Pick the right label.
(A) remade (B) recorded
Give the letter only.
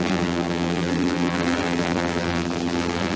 A